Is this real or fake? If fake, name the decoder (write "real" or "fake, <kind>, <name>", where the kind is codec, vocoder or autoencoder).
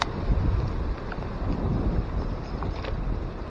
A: real